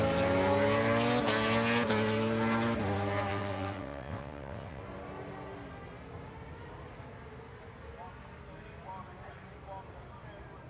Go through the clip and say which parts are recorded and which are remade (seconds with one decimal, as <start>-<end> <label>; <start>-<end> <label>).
0.0-3.3 recorded; 3.3-4.8 remade; 4.8-10.7 recorded